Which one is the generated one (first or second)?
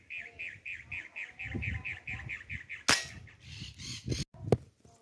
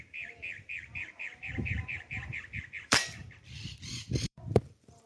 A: second